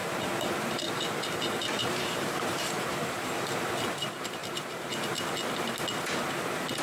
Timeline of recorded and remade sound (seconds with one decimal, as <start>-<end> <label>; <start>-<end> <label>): 0.0-0.6 remade; 0.6-1.6 recorded; 1.6-3.0 remade; 3.0-6.8 recorded